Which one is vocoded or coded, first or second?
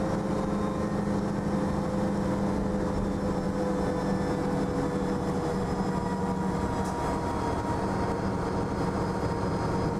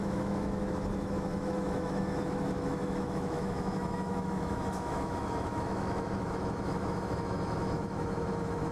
second